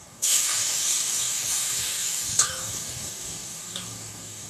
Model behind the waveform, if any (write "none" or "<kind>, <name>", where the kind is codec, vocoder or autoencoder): codec, DAC